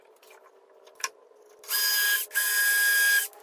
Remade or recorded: recorded